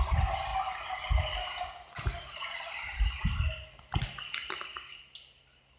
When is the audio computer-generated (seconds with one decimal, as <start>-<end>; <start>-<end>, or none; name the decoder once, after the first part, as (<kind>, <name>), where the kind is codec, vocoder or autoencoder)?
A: none